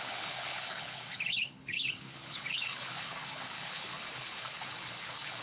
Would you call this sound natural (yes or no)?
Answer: no